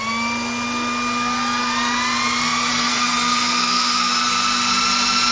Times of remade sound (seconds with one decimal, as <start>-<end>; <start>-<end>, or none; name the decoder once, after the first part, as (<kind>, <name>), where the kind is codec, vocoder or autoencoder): 2.7-4.1 (codec, SNAC)